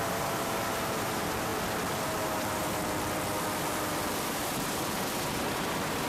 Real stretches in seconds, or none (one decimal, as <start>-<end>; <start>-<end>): 1.5-4.2